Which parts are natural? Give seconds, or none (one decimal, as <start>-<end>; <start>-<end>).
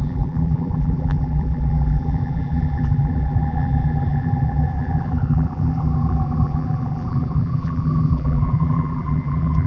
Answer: none